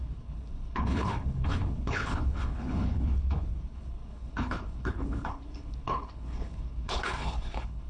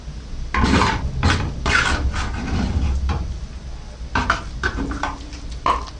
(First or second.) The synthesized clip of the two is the first